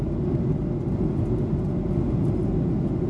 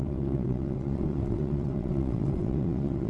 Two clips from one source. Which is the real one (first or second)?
first